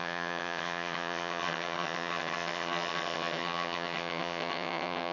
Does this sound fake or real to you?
fake